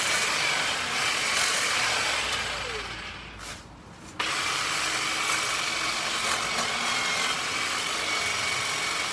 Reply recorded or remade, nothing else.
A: recorded